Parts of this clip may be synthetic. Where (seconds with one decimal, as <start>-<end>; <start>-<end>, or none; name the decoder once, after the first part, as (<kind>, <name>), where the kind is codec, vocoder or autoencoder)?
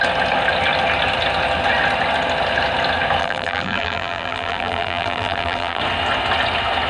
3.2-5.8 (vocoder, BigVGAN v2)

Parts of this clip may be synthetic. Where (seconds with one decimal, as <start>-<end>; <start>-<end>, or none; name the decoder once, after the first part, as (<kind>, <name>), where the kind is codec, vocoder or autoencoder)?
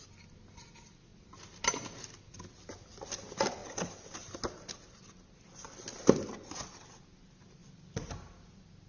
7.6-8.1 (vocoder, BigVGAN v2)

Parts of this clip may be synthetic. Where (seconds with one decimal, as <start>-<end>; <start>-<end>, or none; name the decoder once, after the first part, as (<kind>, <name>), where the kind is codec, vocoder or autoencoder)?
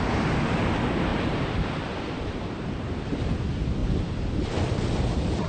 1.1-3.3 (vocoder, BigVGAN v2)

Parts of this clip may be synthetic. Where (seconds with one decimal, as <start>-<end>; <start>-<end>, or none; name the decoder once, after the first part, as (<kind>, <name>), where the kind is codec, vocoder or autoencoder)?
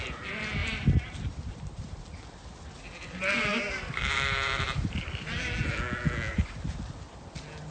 0.6-2.0 (vocoder, BigVGAN v2); 3.5-5.3; 6.3-6.8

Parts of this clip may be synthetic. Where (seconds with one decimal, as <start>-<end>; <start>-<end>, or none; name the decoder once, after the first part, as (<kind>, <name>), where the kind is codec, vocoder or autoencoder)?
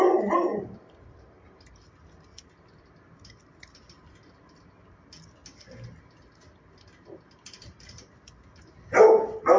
0.5-1.9 (vocoder, BigVGAN v2)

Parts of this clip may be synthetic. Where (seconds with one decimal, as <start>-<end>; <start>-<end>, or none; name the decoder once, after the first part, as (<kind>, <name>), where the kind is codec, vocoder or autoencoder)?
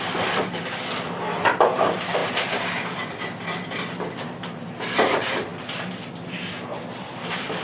0.0-7.6 (vocoder, BigVGAN v2)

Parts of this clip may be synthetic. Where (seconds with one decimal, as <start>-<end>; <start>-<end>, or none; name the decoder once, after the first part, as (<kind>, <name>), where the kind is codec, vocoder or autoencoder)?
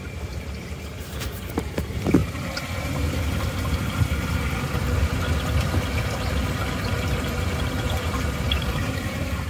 0.0-2.2 (vocoder, BigVGAN v2); 7.2-9.5